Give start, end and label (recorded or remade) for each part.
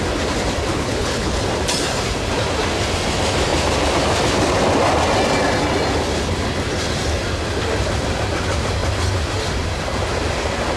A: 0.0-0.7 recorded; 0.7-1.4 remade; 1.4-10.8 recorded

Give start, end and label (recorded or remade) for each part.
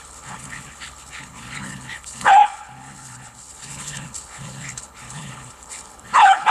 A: 0.0-6.5 remade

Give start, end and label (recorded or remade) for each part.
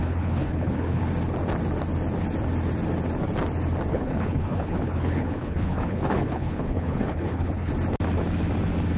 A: 0.0-1.0 remade; 1.0-3.9 recorded; 3.9-7.7 remade; 7.7-9.0 recorded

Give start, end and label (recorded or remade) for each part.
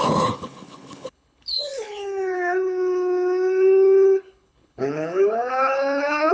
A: 0.0-6.3 remade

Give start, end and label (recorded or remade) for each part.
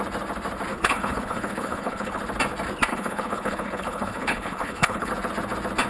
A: 0.0-0.7 recorded; 0.7-2.2 remade; 2.2-2.9 recorded; 2.9-5.1 remade; 5.1-5.9 recorded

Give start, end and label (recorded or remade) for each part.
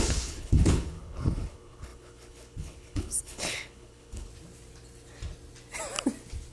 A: 0.0-4.3 remade; 4.3-6.5 recorded